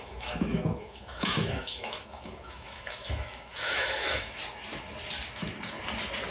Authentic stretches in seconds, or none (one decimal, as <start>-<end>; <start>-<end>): 4.4-6.3